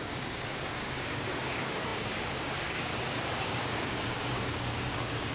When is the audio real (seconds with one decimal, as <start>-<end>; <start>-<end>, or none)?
none